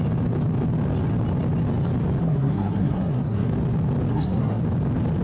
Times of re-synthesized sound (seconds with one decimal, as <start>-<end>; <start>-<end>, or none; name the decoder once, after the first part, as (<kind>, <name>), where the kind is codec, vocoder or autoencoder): 2.2-3.5 (codec, SNAC); 4.1-4.6